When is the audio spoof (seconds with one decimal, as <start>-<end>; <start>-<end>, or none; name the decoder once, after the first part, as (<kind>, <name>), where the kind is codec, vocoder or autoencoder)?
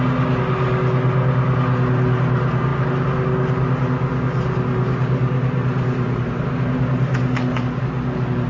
none